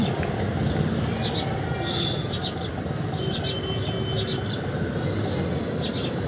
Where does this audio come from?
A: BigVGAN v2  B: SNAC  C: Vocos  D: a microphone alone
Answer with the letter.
D